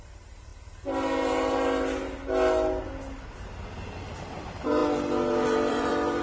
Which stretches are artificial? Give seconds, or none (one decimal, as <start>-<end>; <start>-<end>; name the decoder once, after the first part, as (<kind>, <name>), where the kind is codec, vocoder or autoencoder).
0.0-0.5 (vocoder, BigVGAN v2); 4.2-4.8; 5.7-6.2